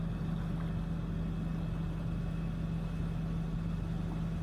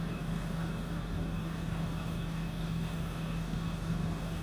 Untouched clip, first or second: first